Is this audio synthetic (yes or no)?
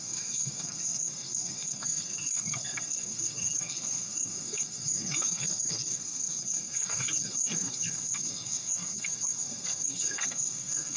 yes